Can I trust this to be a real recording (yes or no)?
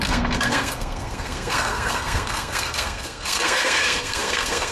no